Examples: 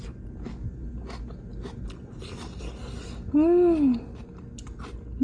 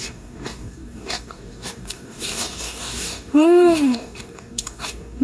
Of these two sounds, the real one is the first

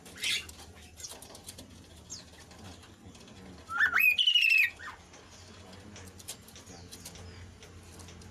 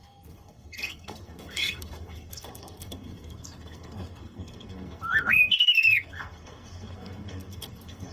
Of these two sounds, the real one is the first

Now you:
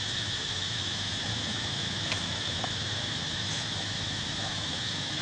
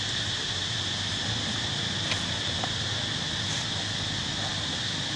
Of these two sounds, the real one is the second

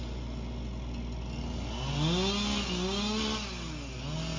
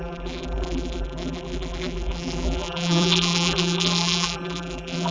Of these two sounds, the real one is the first